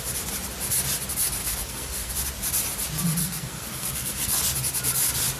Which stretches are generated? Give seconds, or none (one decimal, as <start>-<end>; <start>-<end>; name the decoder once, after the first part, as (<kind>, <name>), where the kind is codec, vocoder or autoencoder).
1.4-2.1 (codec, SNAC); 3.2-4.4